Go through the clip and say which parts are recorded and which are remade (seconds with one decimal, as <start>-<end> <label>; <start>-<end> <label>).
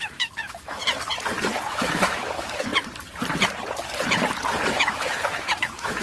0.0-0.8 remade; 0.8-1.7 recorded; 1.7-2.7 remade; 2.7-4.7 recorded; 4.7-6.0 remade